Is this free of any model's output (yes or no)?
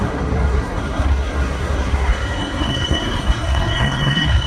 no